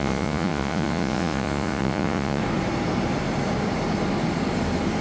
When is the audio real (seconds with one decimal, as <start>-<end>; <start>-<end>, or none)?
2.4-5.0